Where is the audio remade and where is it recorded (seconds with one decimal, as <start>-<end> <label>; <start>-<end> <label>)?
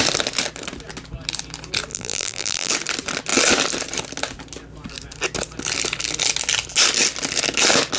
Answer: 0.0-1.9 recorded; 1.9-2.7 remade; 2.7-8.0 recorded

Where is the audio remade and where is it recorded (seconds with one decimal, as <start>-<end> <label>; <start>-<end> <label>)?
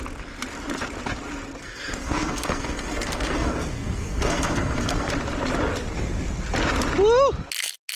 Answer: 0.0-1.6 recorded; 1.6-5.1 remade; 5.1-8.0 recorded